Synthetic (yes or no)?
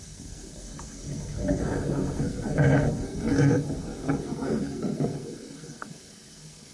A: yes